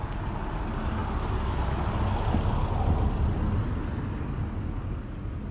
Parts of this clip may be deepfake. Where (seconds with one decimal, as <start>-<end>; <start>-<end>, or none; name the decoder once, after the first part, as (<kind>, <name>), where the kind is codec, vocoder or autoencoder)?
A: none